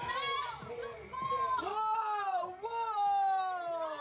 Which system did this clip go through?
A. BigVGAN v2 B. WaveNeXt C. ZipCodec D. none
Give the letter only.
D